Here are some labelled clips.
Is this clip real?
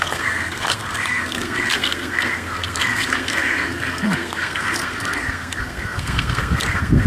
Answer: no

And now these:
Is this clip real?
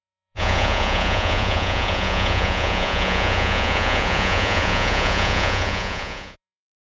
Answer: no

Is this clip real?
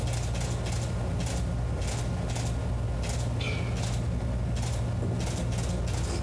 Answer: yes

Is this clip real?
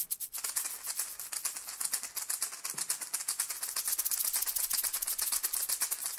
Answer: yes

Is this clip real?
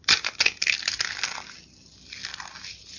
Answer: yes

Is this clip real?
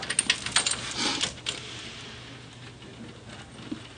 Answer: yes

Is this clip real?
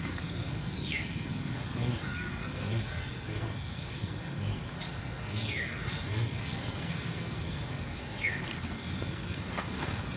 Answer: no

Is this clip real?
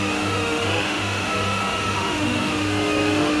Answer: no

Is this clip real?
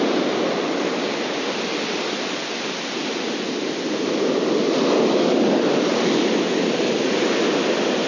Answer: yes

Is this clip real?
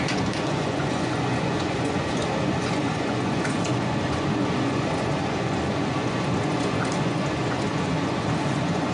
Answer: no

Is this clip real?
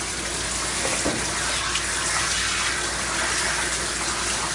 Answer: yes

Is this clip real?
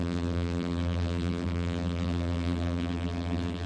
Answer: no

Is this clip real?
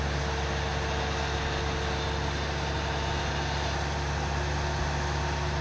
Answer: yes